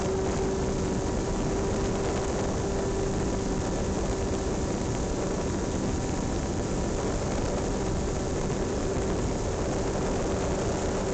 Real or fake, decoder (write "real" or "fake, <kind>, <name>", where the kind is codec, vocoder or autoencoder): real